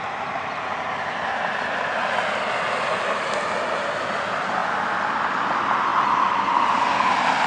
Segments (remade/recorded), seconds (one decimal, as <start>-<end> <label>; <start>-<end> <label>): 0.0-7.5 recorded